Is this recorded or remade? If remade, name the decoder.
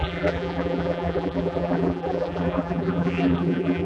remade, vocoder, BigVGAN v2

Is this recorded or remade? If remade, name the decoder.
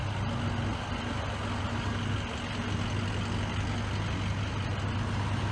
recorded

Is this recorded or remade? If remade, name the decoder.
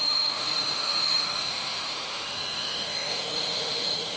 remade, autoencoder, DAC-VAE